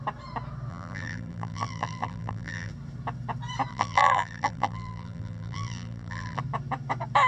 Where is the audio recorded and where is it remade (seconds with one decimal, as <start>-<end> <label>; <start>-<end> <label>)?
0.0-0.7 recorded; 0.7-2.7 remade; 2.7-3.7 recorded; 3.7-6.4 remade; 6.4-7.3 recorded